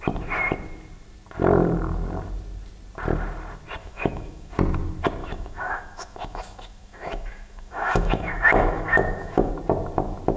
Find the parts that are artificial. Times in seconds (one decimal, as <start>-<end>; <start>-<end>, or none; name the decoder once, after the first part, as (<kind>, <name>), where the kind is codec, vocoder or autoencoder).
3.8-4.5 (autoencoder, DAC-VAE); 5.2-9.5